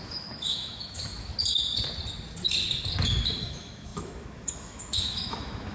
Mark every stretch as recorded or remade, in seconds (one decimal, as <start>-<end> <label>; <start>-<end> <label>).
0.0-1.3 remade; 1.3-3.4 recorded; 3.4-5.7 remade